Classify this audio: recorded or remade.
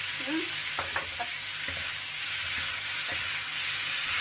recorded